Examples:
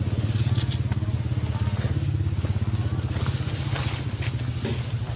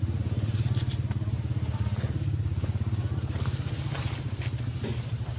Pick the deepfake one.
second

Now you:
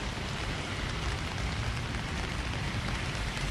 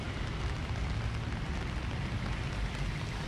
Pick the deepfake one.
first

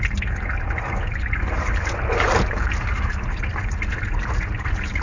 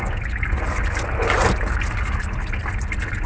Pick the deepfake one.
first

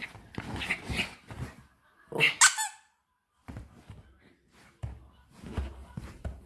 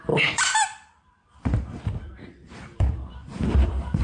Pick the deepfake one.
second